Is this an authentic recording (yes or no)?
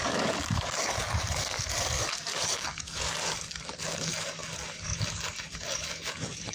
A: no